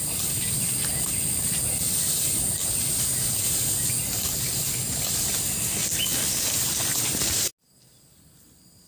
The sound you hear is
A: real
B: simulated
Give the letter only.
A